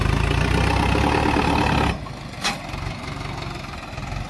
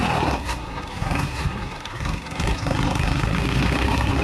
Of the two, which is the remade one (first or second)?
second